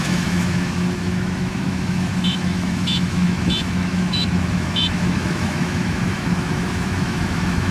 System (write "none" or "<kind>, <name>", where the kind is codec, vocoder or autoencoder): autoencoder, DAC-VAE